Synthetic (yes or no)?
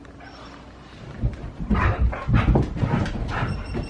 no